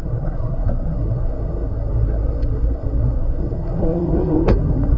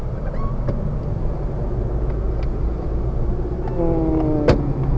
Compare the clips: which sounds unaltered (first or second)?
second